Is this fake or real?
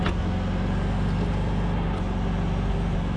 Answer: real